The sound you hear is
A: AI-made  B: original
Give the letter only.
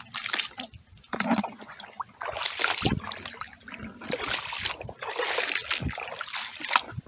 B